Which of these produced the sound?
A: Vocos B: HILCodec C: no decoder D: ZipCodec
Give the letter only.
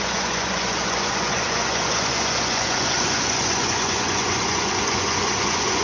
A